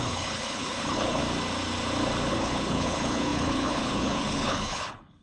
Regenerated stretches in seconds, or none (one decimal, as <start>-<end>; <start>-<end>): 0.0-1.2; 2.3-5.2